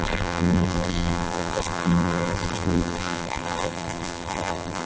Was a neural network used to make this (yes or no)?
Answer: yes